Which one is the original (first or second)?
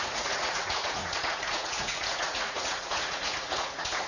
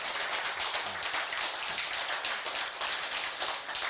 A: second